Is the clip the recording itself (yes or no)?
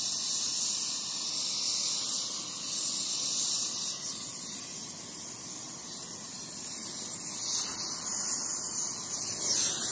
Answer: yes